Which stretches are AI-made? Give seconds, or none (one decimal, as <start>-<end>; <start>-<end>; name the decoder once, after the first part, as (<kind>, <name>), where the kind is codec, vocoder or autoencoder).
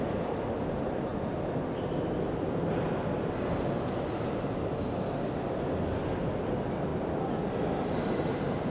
none